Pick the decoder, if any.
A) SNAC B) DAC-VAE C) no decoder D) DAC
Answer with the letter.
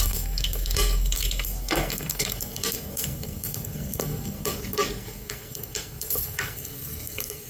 A